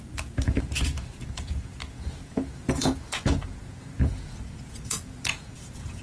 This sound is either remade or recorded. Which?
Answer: remade